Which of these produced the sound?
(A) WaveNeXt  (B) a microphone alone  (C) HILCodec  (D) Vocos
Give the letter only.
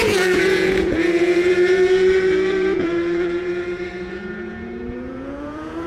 D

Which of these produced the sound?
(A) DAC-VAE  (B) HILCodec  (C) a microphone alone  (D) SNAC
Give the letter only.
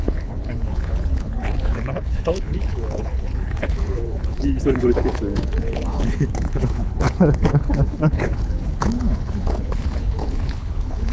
B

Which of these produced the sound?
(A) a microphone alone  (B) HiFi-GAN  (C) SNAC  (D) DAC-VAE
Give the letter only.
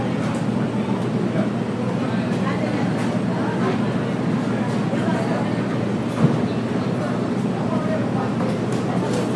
A